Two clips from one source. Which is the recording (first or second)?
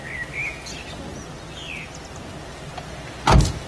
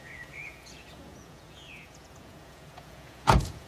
first